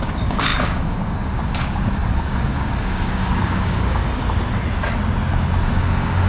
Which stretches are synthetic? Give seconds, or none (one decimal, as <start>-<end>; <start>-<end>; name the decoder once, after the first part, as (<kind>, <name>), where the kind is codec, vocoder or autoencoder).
0.0-4.0 (codec, DAC); 5.7-6.3